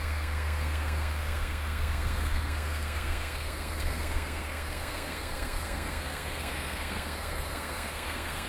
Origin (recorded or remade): remade